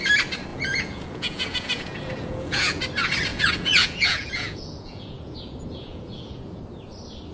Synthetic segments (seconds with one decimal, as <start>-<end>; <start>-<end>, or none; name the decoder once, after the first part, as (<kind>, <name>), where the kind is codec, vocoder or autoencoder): 0.5-2.8 (vocoder, Vocos); 3.3-6.6